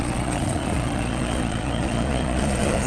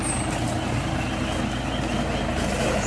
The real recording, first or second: second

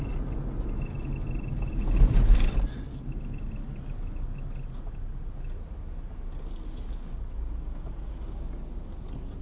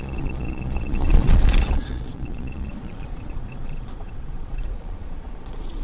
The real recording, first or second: first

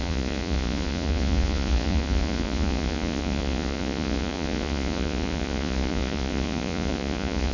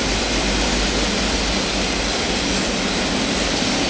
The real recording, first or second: second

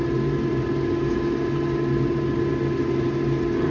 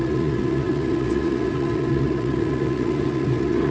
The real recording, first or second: first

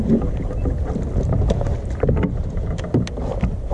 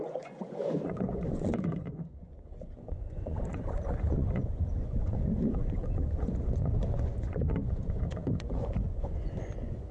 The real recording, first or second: first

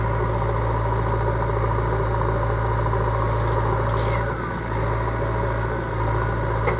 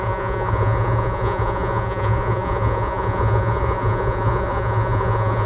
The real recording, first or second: first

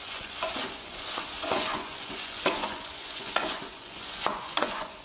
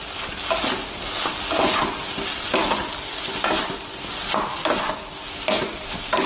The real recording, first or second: second